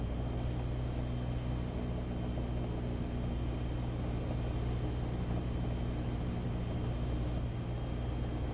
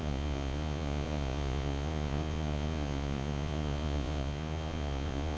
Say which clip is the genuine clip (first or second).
first